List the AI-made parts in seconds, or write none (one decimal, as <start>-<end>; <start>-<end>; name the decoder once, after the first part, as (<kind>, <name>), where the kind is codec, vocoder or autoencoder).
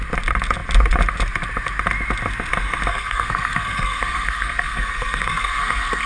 2.9-6.1 (codec, SNAC)